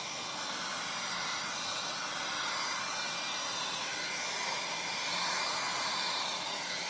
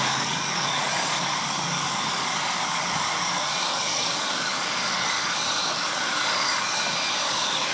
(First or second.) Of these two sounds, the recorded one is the first